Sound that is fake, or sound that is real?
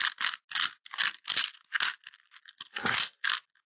real